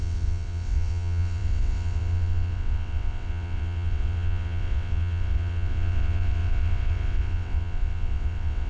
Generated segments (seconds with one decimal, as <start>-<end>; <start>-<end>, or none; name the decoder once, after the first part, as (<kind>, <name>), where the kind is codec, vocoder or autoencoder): 0.0-8.7 (vocoder, WaveNeXt)